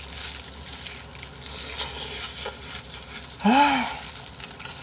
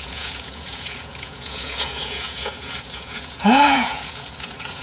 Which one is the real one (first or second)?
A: first